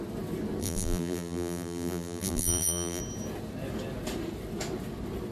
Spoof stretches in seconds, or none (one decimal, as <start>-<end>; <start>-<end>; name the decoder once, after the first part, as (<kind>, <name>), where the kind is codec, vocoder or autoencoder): 0.6-3.0 (vocoder, BigVGAN v2)